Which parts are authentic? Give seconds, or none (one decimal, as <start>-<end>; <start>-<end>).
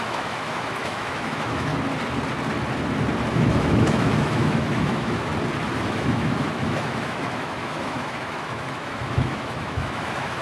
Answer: 1.7-3.3; 5.3-5.9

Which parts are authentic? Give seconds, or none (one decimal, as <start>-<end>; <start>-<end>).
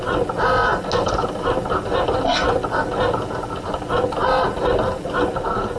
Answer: 0.0-5.8